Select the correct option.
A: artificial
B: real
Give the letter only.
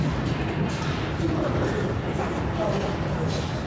B